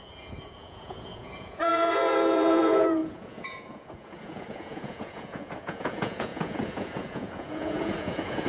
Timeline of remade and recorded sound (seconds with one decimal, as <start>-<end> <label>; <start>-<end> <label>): 0.0-8.5 remade